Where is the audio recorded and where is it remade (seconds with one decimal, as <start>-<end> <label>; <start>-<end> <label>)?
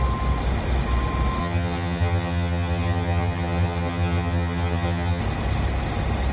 0.0-1.4 recorded; 1.4-5.2 remade; 5.2-6.3 recorded